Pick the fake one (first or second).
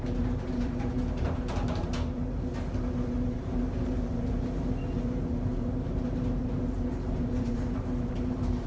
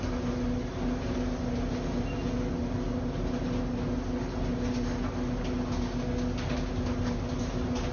first